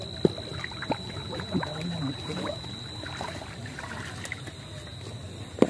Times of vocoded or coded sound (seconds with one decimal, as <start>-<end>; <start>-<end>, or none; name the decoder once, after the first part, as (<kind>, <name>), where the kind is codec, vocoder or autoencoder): 0.5-3.9 (vocoder, BigVGAN v2)

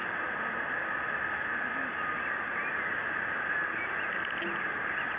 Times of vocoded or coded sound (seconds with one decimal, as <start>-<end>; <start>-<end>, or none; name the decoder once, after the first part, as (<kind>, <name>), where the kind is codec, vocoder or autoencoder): 2.9-3.6 (vocoder, BigVGAN v2); 4.6-5.2